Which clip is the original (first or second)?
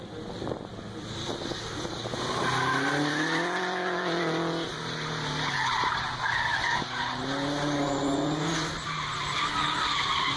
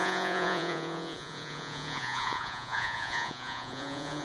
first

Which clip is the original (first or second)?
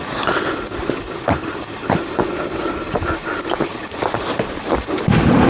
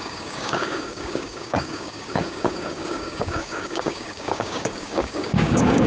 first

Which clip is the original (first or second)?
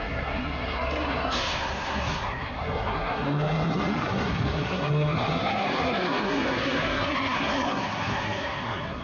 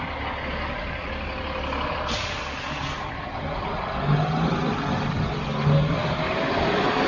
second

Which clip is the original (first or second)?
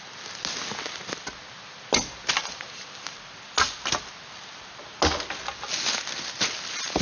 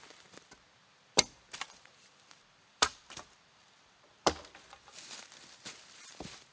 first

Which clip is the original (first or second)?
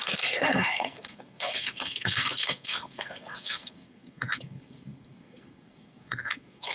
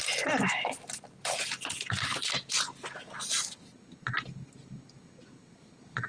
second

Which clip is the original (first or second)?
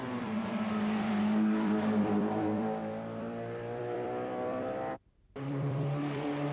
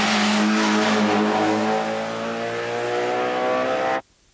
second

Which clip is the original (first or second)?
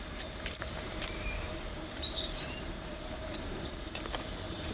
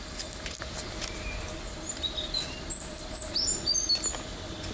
second